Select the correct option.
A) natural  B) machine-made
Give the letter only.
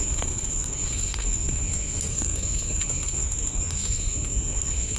B